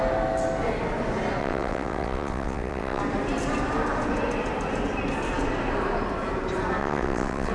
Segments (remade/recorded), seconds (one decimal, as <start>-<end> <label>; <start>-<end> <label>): 0.0-1.4 recorded; 1.4-3.0 remade; 3.0-6.8 recorded; 6.8-7.5 remade